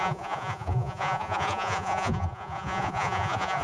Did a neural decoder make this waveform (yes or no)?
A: yes